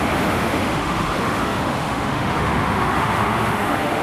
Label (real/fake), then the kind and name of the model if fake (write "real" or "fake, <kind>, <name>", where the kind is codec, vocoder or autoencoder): fake, autoencoder, DAC-VAE